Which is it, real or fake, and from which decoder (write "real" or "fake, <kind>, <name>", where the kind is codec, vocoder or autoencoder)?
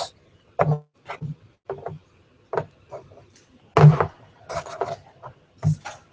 real